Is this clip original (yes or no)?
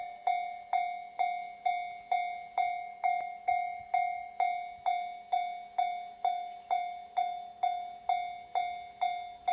yes